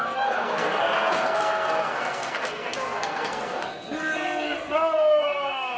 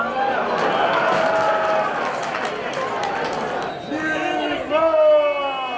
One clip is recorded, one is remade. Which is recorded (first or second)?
second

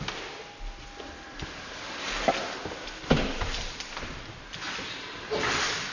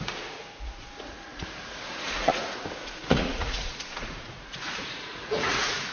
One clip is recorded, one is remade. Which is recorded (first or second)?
first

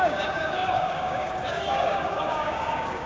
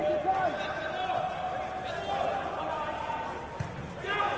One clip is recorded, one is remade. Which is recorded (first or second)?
second